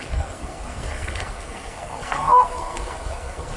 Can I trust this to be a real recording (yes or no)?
no